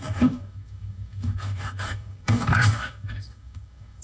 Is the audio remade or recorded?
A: remade